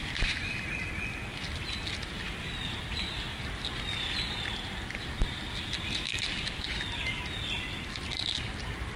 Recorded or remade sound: recorded